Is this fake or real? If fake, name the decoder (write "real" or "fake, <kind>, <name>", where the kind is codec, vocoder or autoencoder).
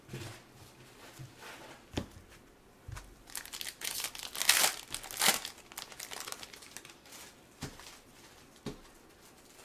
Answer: real